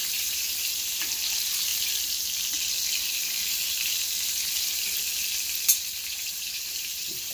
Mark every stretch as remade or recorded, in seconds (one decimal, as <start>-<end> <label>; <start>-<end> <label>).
0.0-1.2 remade; 1.2-6.2 recorded; 6.2-7.3 remade